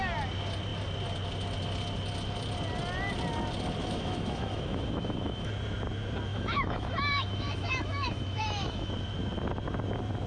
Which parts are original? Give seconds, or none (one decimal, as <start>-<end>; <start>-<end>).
0.0-3.8; 5.5-6.3; 8.9-10.3

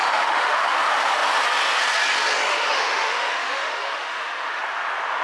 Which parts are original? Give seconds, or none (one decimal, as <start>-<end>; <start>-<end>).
0.7-2.5; 4.6-5.2

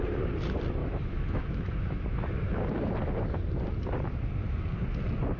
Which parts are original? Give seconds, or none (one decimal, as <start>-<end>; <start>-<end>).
0.0-0.8; 2.3-5.4

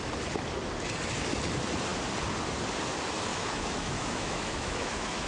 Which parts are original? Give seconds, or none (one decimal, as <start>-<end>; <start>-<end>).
0.0-3.3

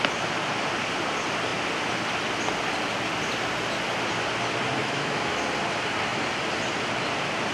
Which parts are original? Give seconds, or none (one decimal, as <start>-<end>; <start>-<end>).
0.0-4.8; 5.4-7.5

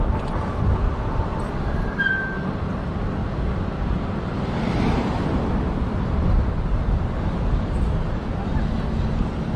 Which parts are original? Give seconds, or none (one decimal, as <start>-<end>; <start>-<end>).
0.0-9.6

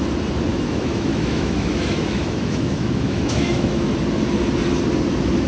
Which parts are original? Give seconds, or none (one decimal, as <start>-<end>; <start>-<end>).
0.0-0.5; 3.8-5.5